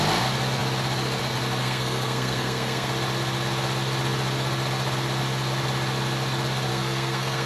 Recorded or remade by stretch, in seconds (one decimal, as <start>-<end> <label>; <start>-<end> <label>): 0.0-1.6 recorded; 1.6-2.9 remade; 2.9-6.7 recorded; 6.7-7.5 remade